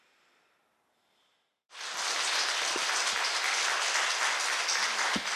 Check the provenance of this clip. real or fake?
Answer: real